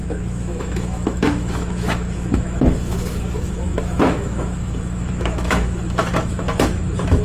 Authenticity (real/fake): fake